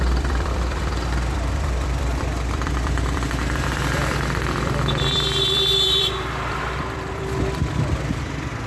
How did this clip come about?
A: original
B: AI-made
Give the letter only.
B